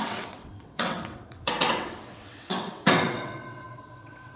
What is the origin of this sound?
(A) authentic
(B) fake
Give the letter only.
B